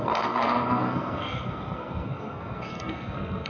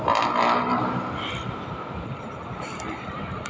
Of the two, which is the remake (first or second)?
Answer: first